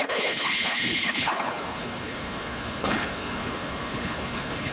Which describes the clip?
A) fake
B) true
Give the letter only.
A